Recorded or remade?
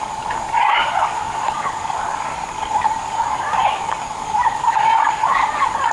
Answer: remade